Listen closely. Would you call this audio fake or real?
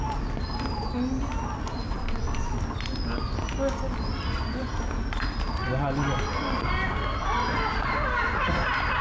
real